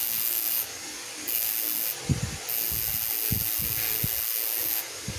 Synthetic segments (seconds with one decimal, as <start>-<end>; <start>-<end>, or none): 0.0-1.5; 4.6-5.2